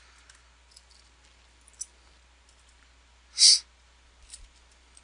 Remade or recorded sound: recorded